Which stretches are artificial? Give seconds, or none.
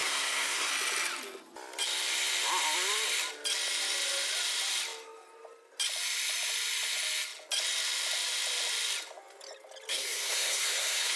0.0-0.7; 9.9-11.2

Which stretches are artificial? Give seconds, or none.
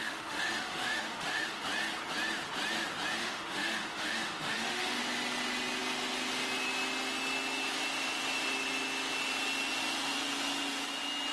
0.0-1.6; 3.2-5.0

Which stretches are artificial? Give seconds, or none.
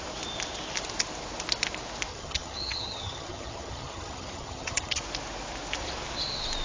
2.1-5.0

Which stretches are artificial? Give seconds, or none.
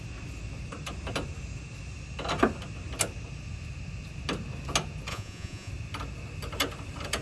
5.1-5.7